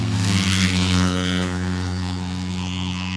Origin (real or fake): fake